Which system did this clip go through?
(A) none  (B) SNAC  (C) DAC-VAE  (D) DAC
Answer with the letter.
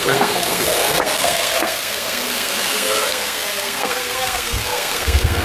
B